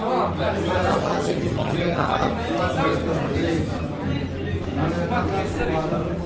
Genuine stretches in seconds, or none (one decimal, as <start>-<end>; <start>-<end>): 0.0-0.9; 2.3-6.3